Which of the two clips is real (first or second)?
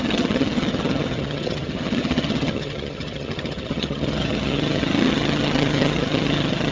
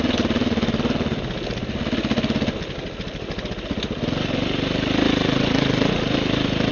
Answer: second